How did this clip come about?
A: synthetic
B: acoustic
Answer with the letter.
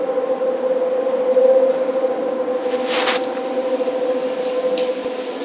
B